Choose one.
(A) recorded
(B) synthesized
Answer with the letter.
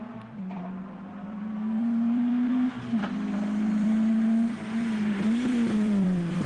B